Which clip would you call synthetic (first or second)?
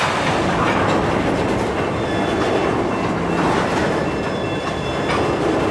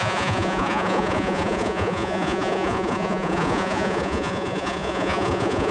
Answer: second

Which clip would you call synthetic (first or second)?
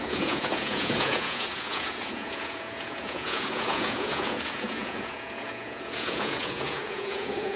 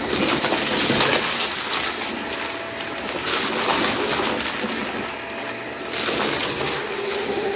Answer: first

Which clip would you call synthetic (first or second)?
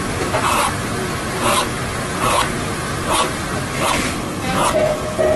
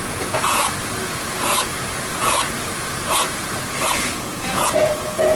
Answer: second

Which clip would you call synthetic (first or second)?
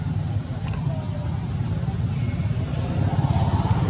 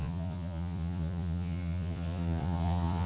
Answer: second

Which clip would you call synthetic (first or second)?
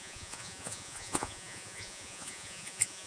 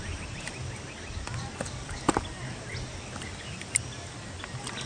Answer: first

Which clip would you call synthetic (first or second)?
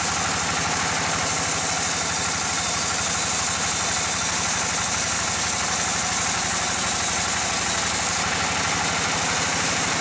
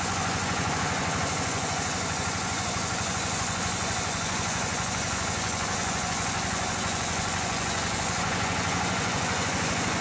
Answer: second